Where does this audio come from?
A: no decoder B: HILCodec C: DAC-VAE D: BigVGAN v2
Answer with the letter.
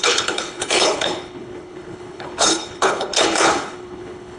B